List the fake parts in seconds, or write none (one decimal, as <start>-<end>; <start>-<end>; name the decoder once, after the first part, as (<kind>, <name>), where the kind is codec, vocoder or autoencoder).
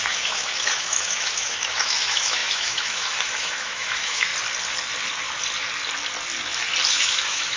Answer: 0.0-4.3 (autoencoder, DAC-VAE); 6.9-7.6